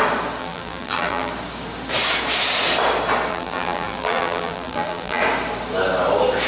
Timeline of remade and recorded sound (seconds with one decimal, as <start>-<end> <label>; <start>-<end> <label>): 0.0-0.4 recorded; 0.4-1.3 remade; 1.3-3.3 recorded; 3.3-5.2 remade; 5.2-6.5 recorded